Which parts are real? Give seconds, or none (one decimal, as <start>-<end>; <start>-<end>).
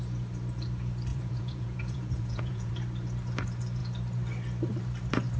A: 0.0-1.1; 2.7-5.4